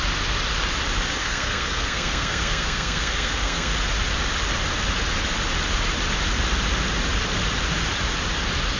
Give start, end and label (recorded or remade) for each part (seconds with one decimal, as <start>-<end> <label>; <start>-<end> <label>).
0.0-1.2 recorded; 1.2-3.7 remade; 3.7-8.8 recorded